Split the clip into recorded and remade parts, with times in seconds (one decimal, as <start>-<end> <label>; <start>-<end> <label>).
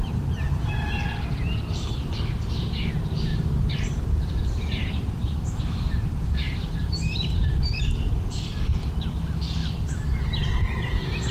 0.0-3.3 recorded; 3.3-7.8 remade; 7.8-11.3 recorded